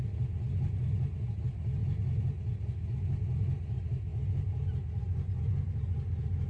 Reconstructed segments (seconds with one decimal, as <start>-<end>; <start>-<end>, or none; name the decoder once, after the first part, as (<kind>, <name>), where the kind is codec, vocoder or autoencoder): none